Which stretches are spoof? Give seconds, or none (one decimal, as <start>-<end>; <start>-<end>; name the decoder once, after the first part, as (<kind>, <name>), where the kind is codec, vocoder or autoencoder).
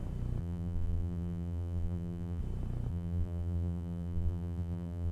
0.4-2.4 (vocoder, BigVGAN v2); 2.9-5.1